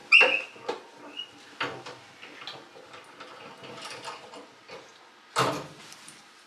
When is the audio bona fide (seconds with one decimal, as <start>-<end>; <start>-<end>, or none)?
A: 0.0-6.5